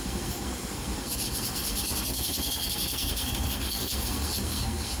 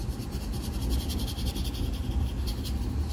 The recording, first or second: second